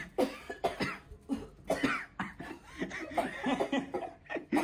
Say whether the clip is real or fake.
real